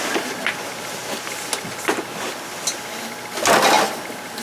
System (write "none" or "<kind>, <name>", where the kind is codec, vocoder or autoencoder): none